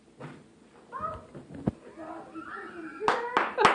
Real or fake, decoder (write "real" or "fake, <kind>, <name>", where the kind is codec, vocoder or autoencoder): real